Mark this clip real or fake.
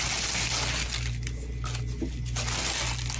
real